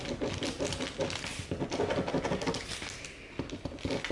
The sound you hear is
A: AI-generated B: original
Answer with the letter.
B